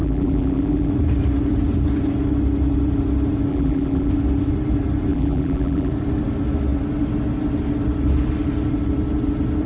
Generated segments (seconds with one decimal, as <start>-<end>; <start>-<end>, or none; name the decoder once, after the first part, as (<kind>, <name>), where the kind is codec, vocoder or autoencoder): 0.0-0.9 (vocoder, BigVGAN v2); 3.5-4.1; 5.1-5.9